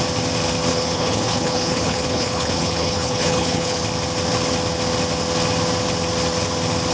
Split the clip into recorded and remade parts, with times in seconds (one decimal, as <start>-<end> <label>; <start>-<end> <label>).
0.0-0.7 recorded; 0.7-3.8 remade; 3.8-6.9 recorded